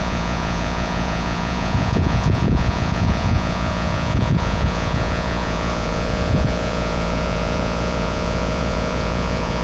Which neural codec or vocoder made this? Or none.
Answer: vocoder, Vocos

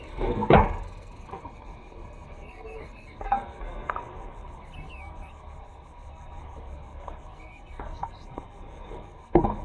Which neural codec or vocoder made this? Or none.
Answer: codec, SNAC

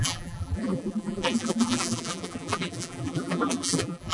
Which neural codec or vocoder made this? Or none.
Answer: vocoder, BigVGAN v2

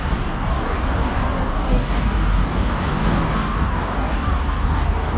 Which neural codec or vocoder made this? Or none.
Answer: codec, DAC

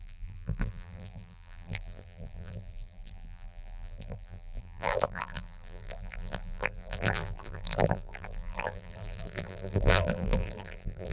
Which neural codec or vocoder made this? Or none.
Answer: vocoder, BigVGAN v2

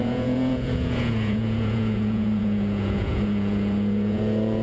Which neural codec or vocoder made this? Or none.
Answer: vocoder, Vocos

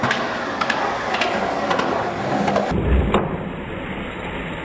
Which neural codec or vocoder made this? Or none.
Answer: none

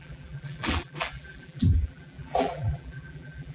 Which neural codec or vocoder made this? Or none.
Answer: vocoder, BigVGAN v2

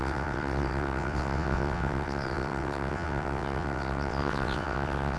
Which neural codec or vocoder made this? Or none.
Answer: vocoder, WaveNeXt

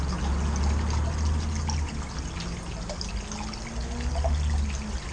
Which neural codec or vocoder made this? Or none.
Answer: none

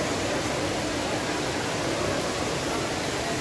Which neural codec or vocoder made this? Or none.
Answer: none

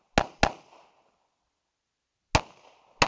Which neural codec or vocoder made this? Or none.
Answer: none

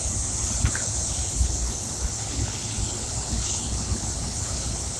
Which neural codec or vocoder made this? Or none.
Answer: codec, HILCodec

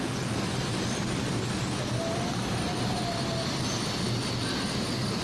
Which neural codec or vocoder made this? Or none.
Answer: none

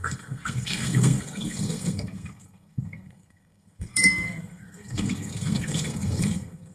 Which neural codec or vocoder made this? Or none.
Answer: codec, SNAC